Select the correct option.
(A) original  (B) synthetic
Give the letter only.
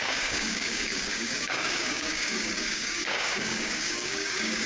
B